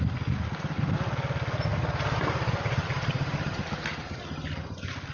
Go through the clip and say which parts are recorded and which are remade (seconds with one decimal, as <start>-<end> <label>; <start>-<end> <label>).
0.0-5.1 recorded